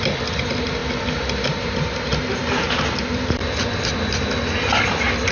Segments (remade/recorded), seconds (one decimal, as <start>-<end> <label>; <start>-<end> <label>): 0.0-5.3 recorded